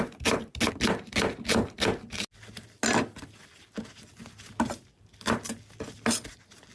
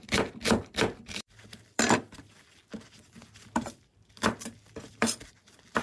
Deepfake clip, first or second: second